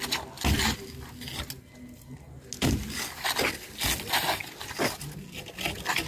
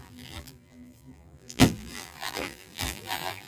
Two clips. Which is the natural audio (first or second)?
first